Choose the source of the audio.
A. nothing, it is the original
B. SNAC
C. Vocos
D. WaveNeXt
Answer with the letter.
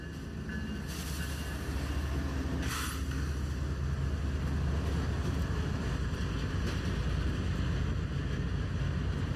A